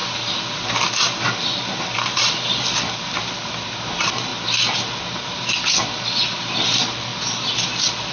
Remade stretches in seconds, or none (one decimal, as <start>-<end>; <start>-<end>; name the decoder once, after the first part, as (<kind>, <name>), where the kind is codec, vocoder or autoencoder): 0.5-4.3 (vocoder, BigVGAN v2); 5.8-8.1